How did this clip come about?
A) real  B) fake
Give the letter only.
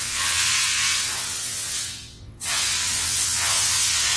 B